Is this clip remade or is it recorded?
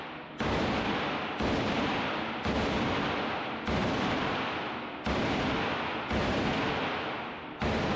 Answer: remade